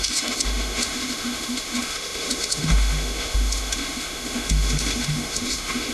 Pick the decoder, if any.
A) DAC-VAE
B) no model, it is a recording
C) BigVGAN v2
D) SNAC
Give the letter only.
A